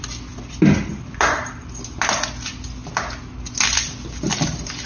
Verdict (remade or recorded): recorded